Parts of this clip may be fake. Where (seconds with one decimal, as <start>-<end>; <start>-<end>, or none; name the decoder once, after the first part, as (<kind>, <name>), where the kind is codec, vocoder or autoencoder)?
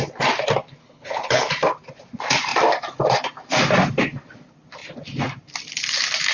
0.8-1.5 (codec, HILCodec)